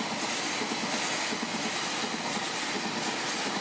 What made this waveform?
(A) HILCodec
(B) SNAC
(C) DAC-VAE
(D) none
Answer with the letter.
D